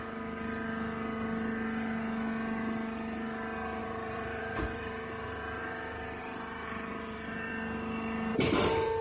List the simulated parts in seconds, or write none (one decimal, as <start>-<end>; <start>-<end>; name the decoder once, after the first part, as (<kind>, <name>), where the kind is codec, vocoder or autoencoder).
3.8-7.5 (vocoder, BigVGAN v2); 8.3-9.0